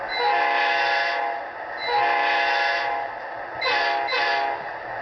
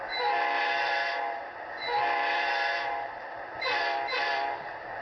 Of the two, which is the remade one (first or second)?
second